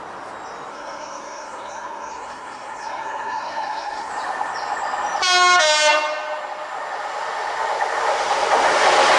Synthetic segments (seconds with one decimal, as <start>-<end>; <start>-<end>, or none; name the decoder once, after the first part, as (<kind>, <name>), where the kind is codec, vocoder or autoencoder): 0.7-4.1 (codec, SNAC)